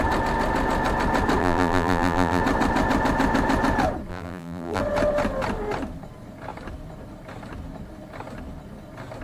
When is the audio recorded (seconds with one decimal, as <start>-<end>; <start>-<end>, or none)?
0.0-1.4; 2.4-4.1; 4.8-9.2

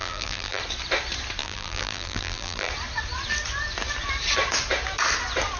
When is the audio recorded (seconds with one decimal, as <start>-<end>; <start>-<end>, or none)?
0.6-1.4; 2.7-5.6